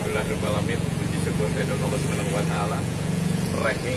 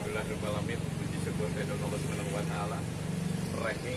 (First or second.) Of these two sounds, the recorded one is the second